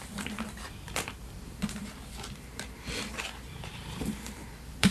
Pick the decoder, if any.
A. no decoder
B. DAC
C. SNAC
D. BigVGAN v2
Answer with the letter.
D